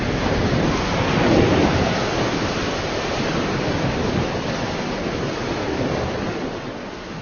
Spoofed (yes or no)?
no